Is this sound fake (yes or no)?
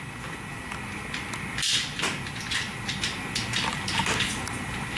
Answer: no